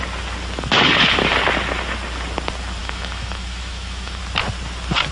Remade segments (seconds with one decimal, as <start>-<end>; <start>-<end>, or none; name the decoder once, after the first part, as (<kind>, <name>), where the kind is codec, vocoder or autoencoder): 2.8-4.2 (autoencoder, DAC-VAE)